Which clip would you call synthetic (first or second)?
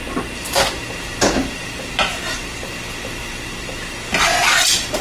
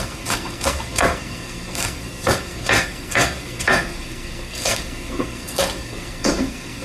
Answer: second